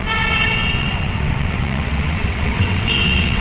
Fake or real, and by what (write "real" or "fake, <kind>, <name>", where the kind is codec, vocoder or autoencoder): fake, vocoder, WaveNeXt